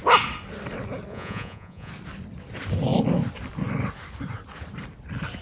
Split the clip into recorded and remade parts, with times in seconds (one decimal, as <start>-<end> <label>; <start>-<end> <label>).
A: 0.0-1.1 recorded; 1.1-1.9 remade; 1.9-5.4 recorded